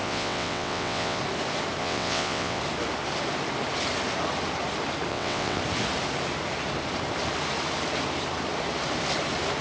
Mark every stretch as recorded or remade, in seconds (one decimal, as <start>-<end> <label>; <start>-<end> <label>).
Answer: 0.0-1.2 remade; 1.2-1.8 recorded; 1.8-2.6 remade; 2.6-5.1 recorded; 5.1-5.6 remade; 5.6-9.6 recorded